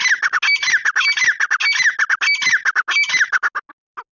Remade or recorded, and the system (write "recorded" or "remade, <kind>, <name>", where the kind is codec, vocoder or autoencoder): recorded